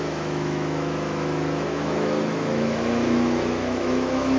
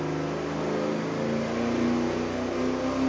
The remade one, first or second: first